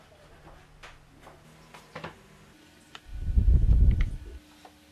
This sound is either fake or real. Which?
real